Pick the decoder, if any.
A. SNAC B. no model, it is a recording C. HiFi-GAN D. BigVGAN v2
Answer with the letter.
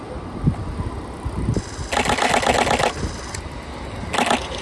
B